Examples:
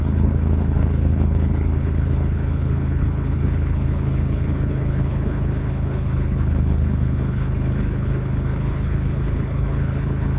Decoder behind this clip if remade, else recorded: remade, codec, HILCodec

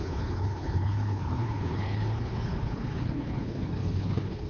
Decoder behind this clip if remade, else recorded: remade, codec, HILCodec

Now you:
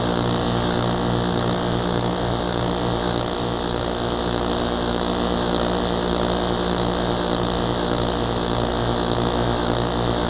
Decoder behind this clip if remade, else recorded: recorded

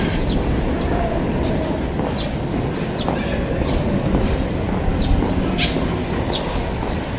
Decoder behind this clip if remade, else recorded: recorded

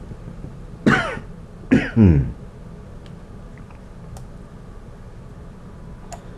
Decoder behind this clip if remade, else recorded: recorded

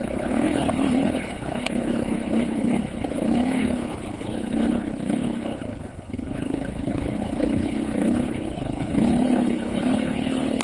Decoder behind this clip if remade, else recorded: remade, codec, HILCodec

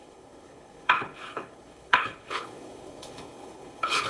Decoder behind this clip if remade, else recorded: remade, codec, HILCodec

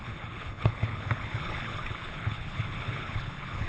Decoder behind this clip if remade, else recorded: remade, codec, HILCodec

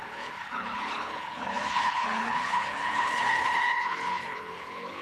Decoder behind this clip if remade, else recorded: remade, codec, HILCodec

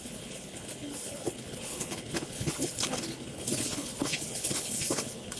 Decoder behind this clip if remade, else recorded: remade, codec, HILCodec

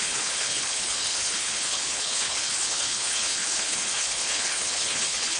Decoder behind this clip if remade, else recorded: remade, codec, HILCodec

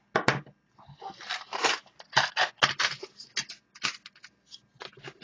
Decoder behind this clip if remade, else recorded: recorded